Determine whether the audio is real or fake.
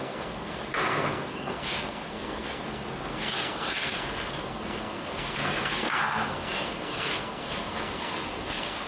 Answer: fake